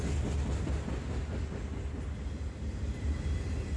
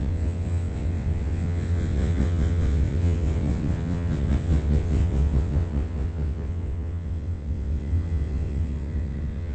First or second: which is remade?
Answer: second